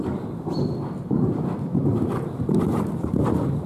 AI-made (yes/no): no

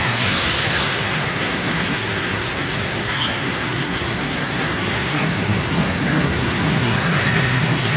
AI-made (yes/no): yes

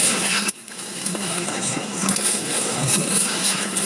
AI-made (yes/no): yes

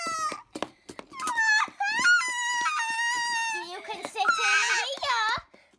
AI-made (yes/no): no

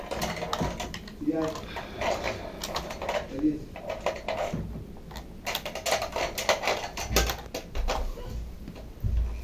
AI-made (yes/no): no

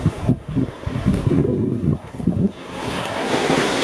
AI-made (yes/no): yes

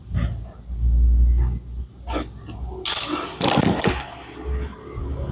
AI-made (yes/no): no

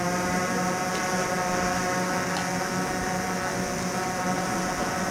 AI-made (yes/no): no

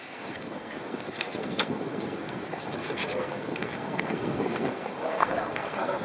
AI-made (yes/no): yes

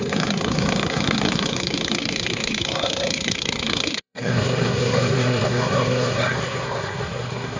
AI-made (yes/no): yes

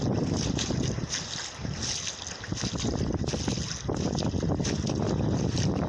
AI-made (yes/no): no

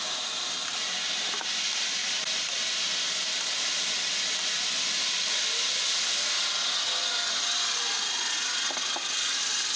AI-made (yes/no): no